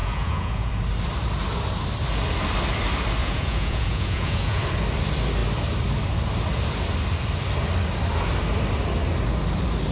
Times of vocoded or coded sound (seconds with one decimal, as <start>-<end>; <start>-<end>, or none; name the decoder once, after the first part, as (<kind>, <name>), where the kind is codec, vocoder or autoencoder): 0.0-0.7 (vocoder, Vocos); 3.2-4.6